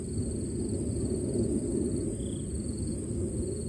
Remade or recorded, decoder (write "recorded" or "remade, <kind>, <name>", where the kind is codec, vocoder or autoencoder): recorded